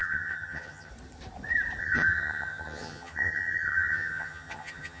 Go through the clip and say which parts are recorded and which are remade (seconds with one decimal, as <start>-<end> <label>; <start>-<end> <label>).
0.0-0.9 remade; 0.9-1.8 recorded; 1.8-5.0 remade